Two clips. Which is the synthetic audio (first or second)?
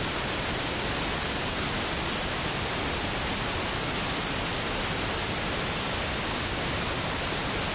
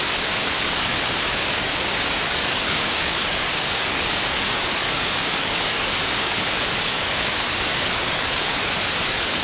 second